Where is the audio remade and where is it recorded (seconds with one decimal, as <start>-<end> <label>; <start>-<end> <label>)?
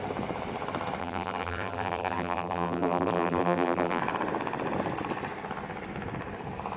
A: 0.0-1.0 recorded; 1.0-4.0 remade; 4.0-6.8 recorded